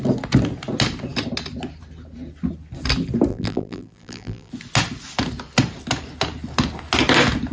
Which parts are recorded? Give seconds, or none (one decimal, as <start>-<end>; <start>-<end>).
0.0-3.3; 4.5-7.5